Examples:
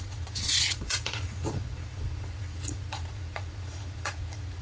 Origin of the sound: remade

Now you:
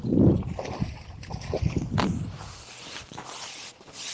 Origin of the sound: recorded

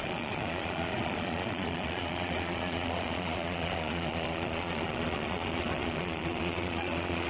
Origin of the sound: remade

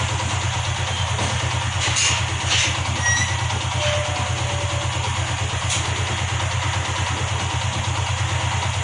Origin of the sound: recorded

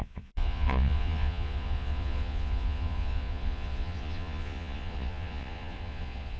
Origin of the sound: remade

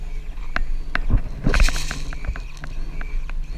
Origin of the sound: recorded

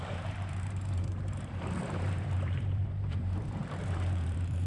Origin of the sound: remade